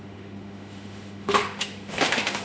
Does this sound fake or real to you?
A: fake